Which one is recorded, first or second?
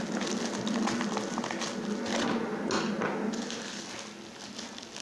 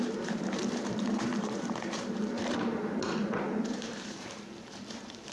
first